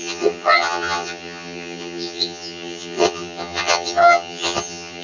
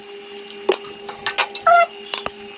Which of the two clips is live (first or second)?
second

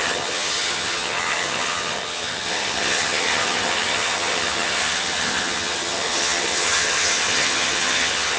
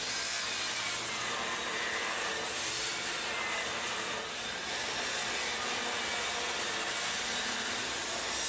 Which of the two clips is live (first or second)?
second